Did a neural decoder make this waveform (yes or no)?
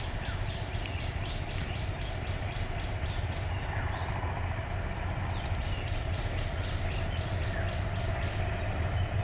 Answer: no